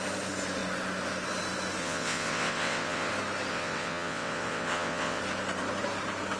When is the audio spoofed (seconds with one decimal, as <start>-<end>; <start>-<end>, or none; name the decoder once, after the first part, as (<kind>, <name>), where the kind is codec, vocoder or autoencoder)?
1.8-3.1 (vocoder, WaveNeXt); 3.5-5.2